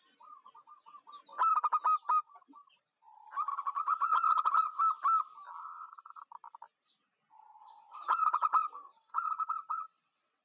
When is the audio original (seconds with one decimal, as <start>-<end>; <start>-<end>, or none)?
0.0-3.5; 4.8-5.6; 6.2-7.6